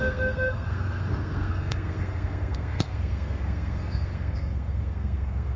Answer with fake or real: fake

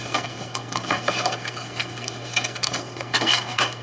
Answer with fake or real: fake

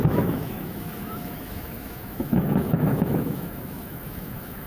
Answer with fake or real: fake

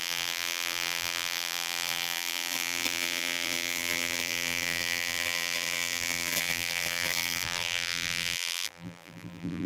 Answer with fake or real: fake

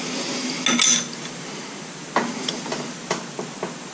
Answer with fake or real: real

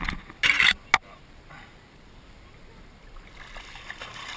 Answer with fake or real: real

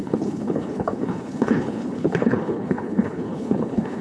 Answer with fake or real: fake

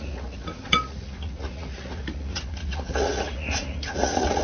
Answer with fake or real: fake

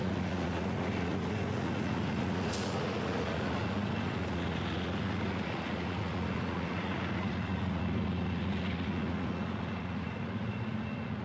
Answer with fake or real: fake